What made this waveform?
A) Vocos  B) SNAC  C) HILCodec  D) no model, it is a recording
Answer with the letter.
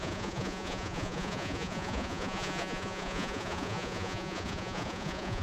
A